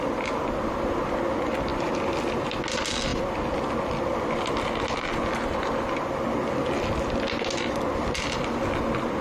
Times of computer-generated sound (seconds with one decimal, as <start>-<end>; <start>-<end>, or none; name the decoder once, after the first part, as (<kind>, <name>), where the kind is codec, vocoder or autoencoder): none